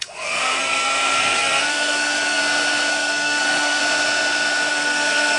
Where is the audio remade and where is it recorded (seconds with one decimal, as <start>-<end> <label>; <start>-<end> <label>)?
0.0-2.4 remade; 2.4-2.9 recorded; 2.9-3.8 remade; 3.8-4.7 recorded; 4.7-5.4 remade